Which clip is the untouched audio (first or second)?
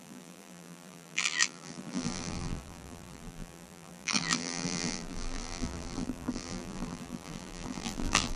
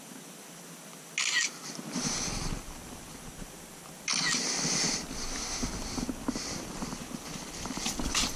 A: second